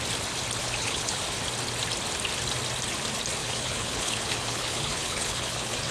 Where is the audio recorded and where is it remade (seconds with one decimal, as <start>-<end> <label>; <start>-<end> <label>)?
0.0-0.6 recorded; 0.6-1.2 remade; 1.2-3.4 recorded; 3.4-5.9 remade

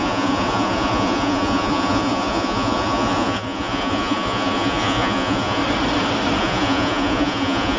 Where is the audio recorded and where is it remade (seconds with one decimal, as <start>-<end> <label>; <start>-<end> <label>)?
0.0-5.6 remade; 5.6-6.4 recorded; 6.4-7.8 remade

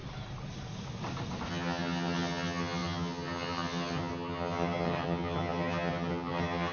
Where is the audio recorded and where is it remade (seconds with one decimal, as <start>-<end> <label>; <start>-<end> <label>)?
0.0-1.5 recorded; 1.5-6.7 remade

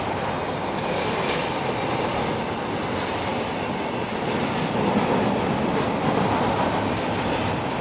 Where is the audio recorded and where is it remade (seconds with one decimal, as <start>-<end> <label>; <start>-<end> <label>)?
0.0-7.8 recorded

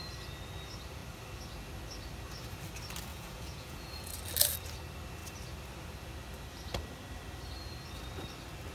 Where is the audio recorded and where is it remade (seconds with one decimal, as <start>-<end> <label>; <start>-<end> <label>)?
0.0-3.1 recorded; 3.1-4.1 remade; 4.1-8.7 recorded